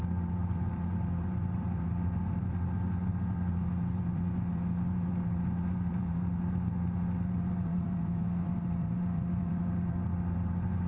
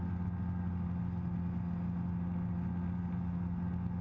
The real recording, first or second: second